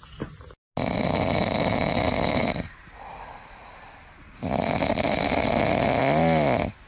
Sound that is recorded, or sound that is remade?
recorded